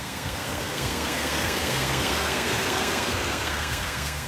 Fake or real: fake